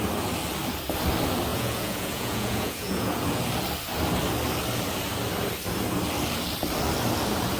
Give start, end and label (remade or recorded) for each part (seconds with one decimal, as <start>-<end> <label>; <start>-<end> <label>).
0.0-1.5 recorded; 1.5-3.4 remade; 3.4-7.6 recorded